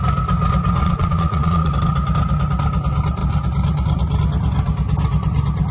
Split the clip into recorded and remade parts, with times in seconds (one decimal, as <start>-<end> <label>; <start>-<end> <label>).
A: 0.0-0.8 recorded; 0.8-1.7 remade; 1.7-5.7 recorded

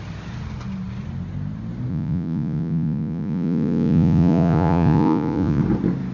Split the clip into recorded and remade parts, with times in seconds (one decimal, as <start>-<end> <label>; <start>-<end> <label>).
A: 0.0-1.9 recorded; 1.9-5.6 remade; 5.6-6.1 recorded

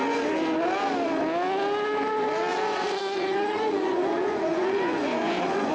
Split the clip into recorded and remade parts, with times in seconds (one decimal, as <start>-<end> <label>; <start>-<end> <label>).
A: 0.0-2.5 recorded; 2.5-5.7 remade

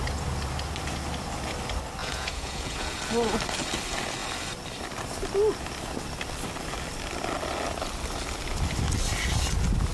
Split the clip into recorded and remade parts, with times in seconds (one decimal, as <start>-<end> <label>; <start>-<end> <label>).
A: 0.0-2.0 recorded; 2.0-3.0 remade; 3.0-9.9 recorded